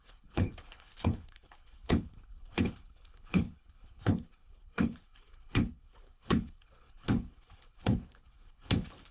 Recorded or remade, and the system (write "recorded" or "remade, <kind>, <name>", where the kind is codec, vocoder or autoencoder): remade, codec, HILCodec